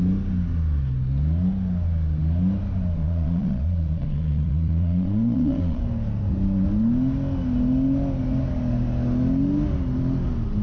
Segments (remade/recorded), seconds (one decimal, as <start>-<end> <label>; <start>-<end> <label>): 0.0-3.0 recorded; 3.0-5.8 remade; 5.8-10.6 recorded